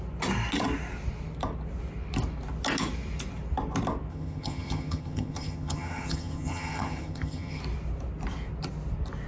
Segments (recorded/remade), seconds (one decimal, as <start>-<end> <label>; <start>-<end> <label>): 0.0-4.1 recorded; 4.1-7.6 remade; 7.6-9.3 recorded